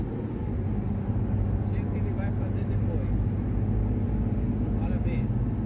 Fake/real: real